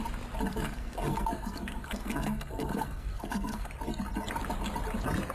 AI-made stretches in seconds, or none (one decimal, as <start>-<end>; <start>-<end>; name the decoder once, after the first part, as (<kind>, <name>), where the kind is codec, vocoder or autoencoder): 0.5-3.7 (codec, SNAC)